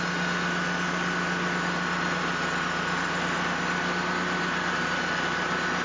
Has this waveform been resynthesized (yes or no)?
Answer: no